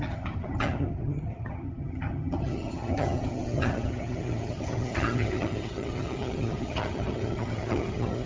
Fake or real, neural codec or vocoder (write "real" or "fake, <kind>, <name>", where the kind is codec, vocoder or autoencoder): fake, vocoder, HiFi-GAN